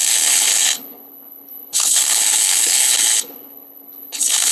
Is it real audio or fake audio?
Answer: fake